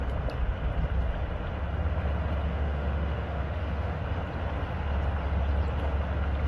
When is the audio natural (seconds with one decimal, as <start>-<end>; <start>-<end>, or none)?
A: 0.0-2.5; 4.0-6.5